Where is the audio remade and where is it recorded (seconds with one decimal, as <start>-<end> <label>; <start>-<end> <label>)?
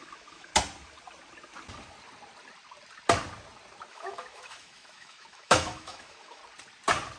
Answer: 0.0-0.5 remade; 0.5-3.9 recorded; 3.9-6.4 remade; 6.4-7.2 recorded